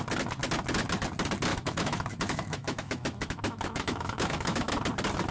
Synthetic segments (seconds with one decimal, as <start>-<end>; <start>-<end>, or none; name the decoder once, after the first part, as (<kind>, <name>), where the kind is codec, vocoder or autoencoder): 1.5-4.7 (autoencoder, DAC-VAE)